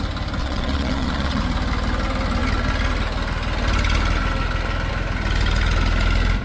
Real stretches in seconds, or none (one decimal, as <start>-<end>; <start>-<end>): 0.0-0.4; 1.4-6.4